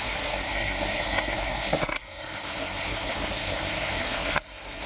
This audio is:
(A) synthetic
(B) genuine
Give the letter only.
A